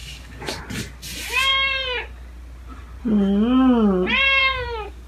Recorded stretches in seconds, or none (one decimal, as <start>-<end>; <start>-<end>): 0.6-4.4